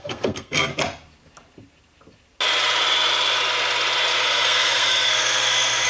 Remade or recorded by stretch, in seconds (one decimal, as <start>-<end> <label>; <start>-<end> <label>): 0.0-0.7 remade; 0.7-4.2 recorded; 4.2-5.9 remade